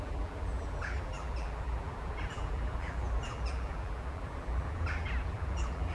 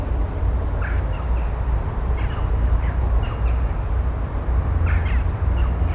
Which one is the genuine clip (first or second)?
second